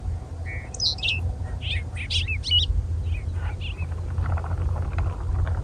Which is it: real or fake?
real